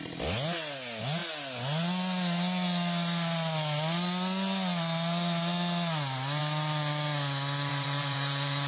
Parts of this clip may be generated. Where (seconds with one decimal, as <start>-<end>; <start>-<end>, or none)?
7.7-8.7